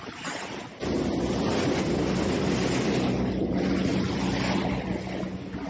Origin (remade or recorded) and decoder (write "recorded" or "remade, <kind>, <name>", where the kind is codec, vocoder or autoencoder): recorded